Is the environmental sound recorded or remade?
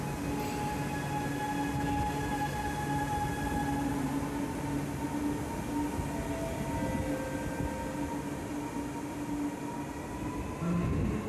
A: recorded